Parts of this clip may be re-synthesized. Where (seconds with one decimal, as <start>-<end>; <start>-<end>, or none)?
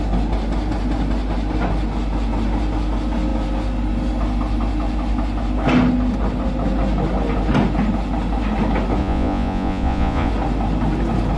9.0-10.3